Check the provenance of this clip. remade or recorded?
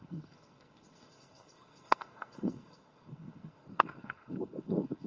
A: remade